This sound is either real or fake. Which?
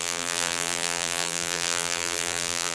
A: fake